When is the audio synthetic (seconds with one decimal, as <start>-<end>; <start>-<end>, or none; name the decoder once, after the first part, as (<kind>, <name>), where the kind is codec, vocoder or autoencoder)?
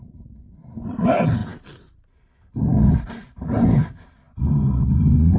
none